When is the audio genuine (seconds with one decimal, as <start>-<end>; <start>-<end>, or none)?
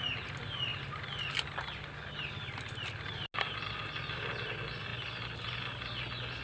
0.0-6.4